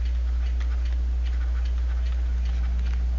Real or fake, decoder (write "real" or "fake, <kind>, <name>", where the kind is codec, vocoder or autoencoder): real